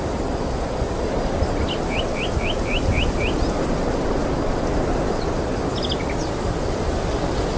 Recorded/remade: recorded